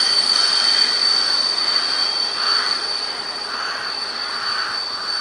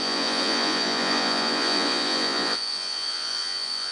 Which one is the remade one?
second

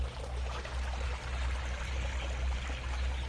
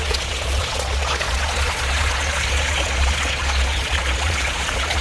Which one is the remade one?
second